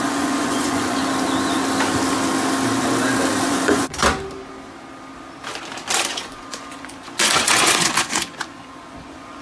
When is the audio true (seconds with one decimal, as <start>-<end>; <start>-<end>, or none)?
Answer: 1.0-3.4; 4.0-6.1